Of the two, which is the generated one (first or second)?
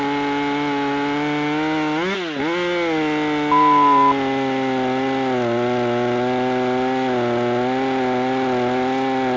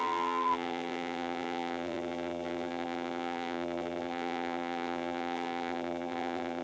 second